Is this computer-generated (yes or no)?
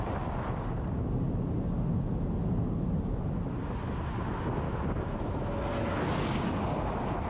no